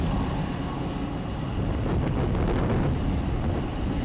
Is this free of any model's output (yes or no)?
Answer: yes